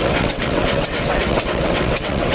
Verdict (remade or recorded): remade